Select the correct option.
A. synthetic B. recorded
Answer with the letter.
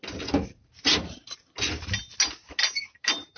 B